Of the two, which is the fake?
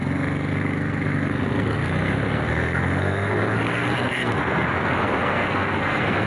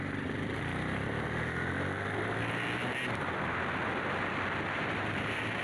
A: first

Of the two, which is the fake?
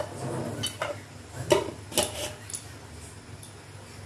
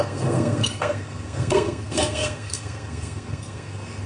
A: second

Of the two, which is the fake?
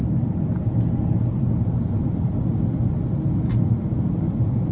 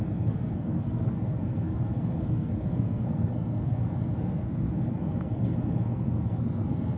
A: second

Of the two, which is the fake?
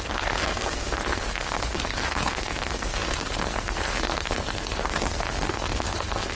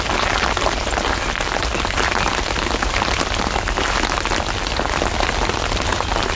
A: first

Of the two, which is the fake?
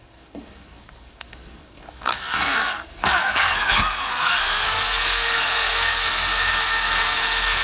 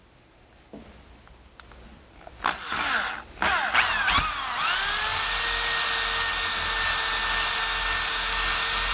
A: first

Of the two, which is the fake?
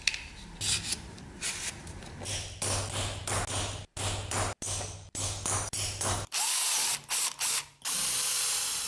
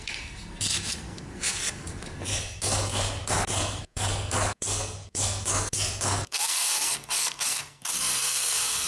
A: second